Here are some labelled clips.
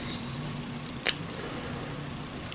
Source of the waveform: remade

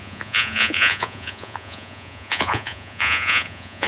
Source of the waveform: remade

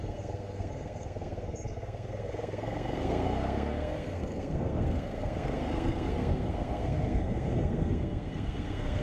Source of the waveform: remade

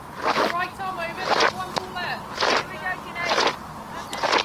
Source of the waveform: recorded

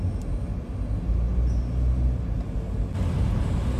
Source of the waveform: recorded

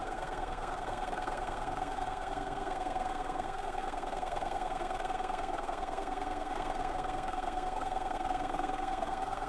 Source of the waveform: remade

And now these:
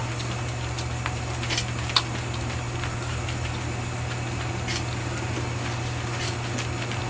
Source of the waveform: recorded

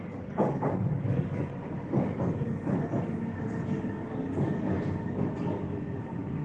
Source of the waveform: remade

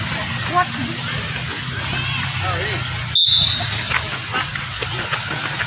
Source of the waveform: recorded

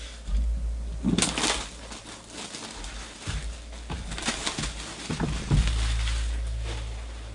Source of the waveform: recorded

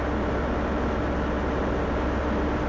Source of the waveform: recorded